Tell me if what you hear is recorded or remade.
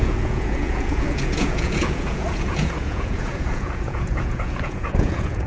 remade